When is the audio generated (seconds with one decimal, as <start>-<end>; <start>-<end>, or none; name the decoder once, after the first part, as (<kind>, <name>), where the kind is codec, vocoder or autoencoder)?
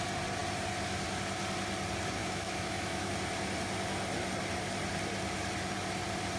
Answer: 2.2-3.1 (autoencoder, DAC-VAE)